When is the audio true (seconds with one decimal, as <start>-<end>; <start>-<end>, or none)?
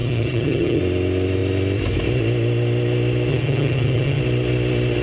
0.8-3.3; 4.2-5.0